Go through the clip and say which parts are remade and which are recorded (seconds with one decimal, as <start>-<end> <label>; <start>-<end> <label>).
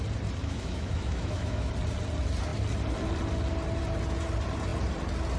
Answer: 0.0-0.4 recorded; 0.4-1.7 remade; 1.7-5.4 recorded